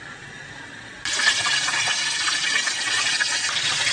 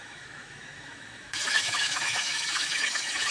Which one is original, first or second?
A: first